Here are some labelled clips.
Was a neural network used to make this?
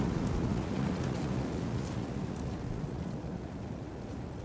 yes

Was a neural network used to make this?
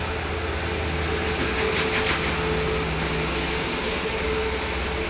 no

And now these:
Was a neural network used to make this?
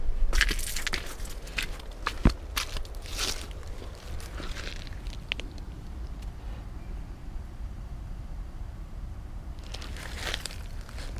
no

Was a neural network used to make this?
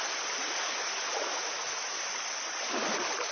no